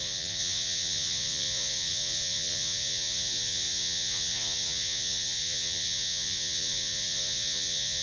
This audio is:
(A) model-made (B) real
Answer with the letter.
A